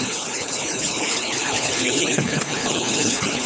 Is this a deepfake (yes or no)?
yes